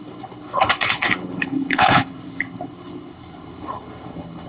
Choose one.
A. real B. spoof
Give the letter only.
B